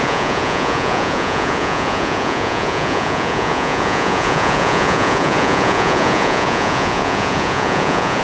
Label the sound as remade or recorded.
remade